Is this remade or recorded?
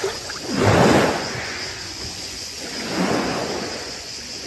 remade